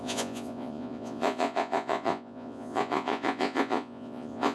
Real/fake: fake